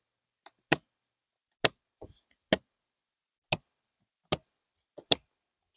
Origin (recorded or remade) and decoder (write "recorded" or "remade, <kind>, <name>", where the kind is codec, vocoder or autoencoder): recorded